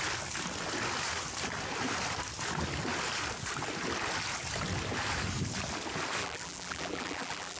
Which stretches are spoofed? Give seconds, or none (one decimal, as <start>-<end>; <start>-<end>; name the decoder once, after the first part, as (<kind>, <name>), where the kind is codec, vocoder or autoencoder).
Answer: 6.2-7.6 (vocoder, BigVGAN v2)